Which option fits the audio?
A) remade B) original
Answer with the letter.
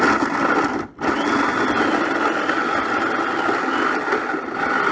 B